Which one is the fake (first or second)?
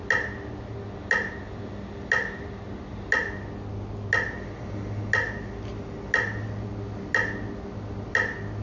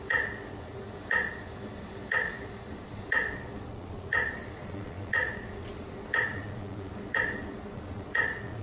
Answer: second